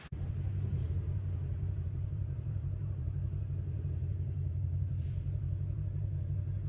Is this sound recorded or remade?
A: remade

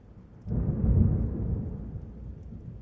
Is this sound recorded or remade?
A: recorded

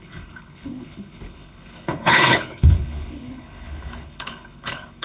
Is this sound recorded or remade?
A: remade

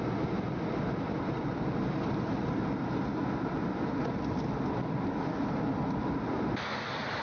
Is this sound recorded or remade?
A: recorded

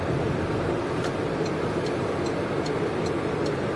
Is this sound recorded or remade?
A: recorded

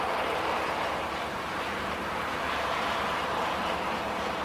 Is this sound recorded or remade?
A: remade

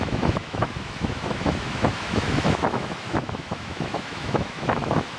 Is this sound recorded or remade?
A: remade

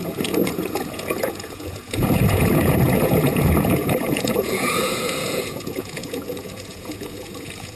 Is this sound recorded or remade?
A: remade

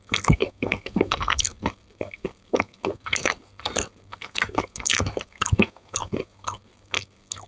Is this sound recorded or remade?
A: remade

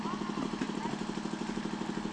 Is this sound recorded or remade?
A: recorded